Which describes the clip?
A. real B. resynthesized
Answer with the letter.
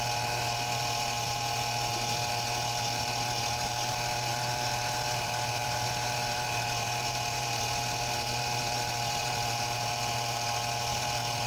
B